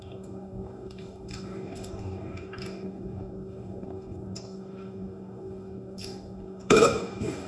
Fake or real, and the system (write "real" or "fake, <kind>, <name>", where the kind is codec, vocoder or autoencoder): fake, codec, DAC